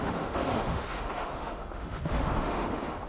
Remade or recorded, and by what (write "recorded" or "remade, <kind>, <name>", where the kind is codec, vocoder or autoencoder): remade, autoencoder, DAC-VAE